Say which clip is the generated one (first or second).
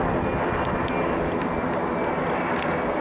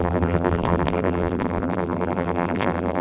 second